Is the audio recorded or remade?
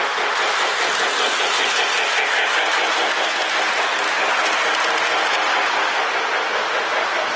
recorded